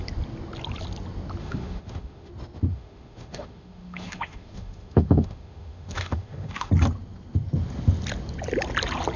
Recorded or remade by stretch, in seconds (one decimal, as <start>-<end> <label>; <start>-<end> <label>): 0.0-1.4 recorded; 1.4-2.3 remade; 2.3-2.7 recorded; 2.7-6.7 remade; 6.7-9.2 recorded